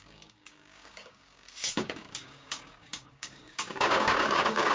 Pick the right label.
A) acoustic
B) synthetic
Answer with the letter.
B